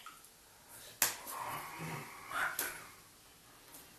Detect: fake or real real